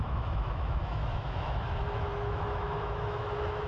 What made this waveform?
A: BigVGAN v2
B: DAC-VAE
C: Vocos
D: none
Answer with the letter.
B